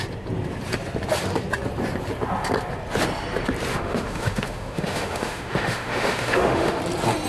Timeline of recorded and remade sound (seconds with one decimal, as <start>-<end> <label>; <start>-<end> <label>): 0.0-3.7 recorded; 3.7-6.8 remade; 6.8-7.3 recorded